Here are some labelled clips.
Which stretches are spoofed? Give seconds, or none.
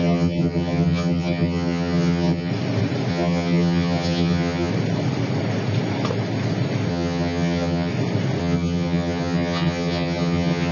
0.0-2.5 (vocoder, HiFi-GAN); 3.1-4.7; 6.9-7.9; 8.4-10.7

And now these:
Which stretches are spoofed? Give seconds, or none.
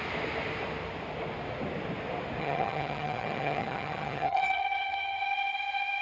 2.4-6.0 (vocoder, HiFi-GAN)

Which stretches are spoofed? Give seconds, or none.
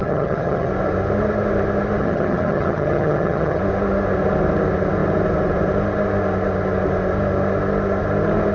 0.0-0.7 (vocoder, HiFi-GAN); 2.0-3.6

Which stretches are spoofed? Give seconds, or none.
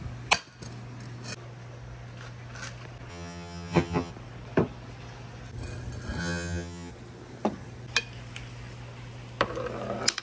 3.1-4.1 (vocoder, HiFi-GAN); 6.2-6.9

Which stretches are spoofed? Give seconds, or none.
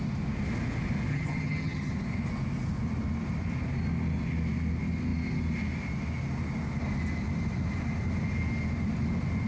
1.1-1.9 (vocoder, HiFi-GAN)